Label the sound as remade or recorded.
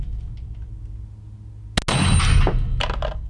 recorded